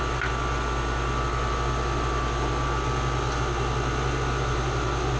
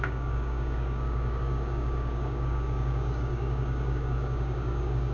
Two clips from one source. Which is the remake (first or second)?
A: second